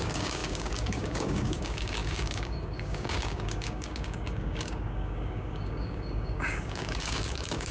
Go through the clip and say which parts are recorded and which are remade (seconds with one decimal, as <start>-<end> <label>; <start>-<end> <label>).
0.0-7.7 remade